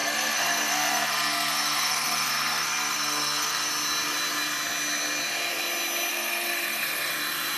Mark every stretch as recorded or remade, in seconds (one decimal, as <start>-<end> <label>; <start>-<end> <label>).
0.0-3.7 remade; 3.7-6.1 recorded; 6.1-7.1 remade; 7.1-7.6 recorded